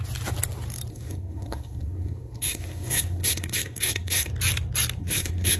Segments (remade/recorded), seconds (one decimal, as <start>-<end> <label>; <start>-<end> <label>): 0.0-0.9 recorded; 0.9-4.3 remade; 4.3-5.0 recorded; 5.0-5.6 remade